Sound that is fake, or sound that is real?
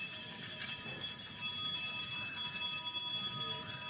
real